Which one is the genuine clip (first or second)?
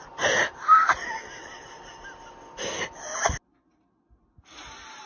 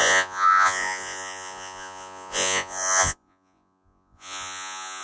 first